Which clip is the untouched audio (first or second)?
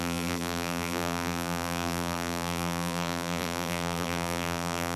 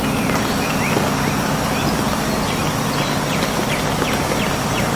second